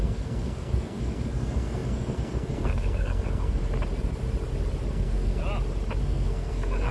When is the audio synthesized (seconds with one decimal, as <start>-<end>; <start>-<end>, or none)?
0.0-3.6; 4.9-5.4; 6.0-6.9